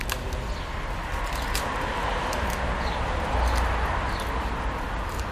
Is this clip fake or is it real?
real